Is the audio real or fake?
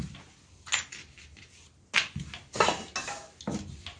real